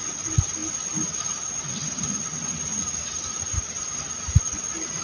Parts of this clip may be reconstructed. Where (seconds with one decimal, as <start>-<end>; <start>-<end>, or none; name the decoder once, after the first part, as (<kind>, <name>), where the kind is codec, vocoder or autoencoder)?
0.0-0.6 (vocoder, BigVGAN v2); 2.8-5.0